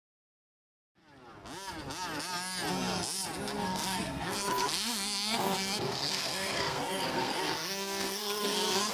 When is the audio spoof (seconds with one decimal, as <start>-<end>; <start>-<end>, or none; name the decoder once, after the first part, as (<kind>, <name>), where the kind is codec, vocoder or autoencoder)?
0.0-1.0 (codec, SNAC); 3.6-8.9

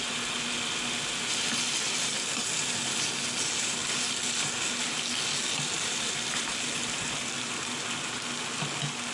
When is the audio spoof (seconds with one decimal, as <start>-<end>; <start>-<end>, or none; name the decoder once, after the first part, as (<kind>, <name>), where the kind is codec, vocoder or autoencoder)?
none

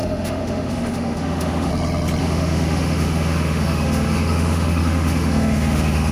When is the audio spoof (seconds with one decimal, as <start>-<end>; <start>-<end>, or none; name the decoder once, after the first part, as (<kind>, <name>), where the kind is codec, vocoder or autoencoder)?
0.0-1.7 (autoencoder, DAC-VAE); 2.2-6.1

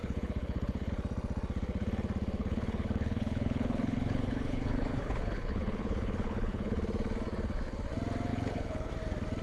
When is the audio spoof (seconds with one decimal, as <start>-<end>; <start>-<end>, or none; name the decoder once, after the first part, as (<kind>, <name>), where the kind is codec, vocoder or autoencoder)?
0.0-0.9 (codec, HILCodec); 2.4-6.8; 8.3-8.9

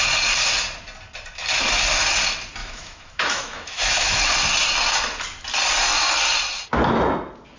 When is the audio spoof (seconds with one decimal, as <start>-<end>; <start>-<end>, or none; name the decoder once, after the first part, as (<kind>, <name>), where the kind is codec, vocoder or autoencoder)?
2.6-4.3 (autoencoder, DAC-VAE)

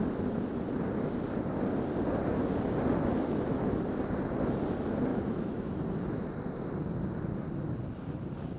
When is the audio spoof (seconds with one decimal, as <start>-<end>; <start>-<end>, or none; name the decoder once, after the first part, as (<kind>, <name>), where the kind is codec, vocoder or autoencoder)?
5.1-5.7 (autoencoder, DAC-VAE)

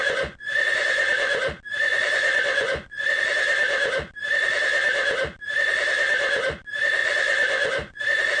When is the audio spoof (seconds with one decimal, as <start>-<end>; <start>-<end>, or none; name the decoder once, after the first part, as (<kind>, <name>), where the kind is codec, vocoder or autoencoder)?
0.0-1.1 (vocoder, Vocos); 1.9-3.2; 7.0-8.0